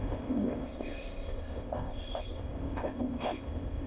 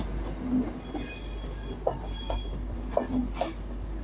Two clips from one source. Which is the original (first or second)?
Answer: second